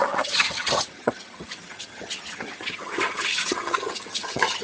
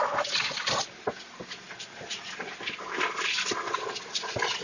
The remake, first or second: first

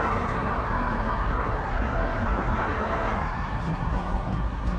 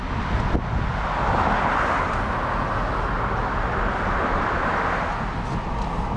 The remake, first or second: first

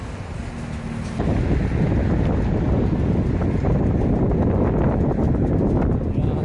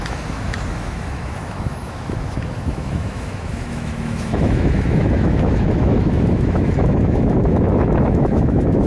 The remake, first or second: second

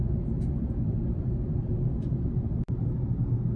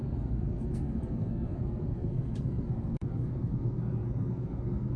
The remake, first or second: second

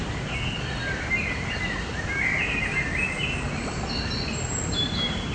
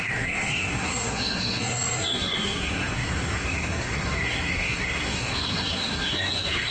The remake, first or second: second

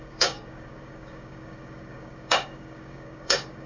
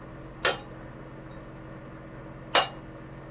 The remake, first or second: first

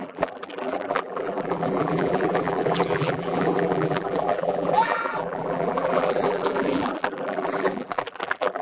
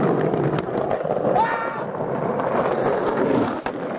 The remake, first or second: first